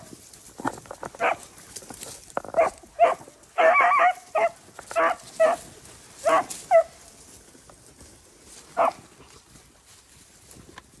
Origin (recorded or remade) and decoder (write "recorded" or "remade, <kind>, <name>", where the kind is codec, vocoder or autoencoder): recorded